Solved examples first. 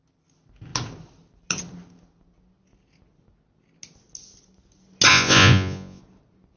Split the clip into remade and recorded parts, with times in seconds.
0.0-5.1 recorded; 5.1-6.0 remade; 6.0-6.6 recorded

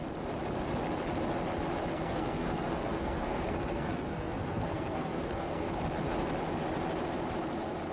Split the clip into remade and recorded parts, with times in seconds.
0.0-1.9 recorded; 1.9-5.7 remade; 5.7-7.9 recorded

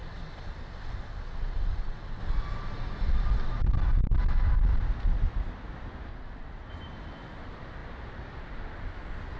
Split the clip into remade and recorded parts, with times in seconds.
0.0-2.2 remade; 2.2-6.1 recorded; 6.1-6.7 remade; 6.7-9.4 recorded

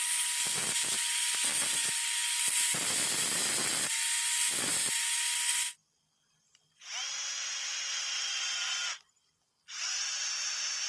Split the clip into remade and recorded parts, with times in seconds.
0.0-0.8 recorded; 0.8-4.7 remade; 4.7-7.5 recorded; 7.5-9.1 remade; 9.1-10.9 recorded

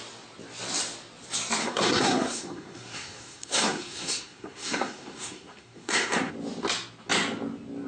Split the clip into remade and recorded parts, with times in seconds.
0.0-1.6 recorded; 1.6-6.3 remade; 6.3-7.9 recorded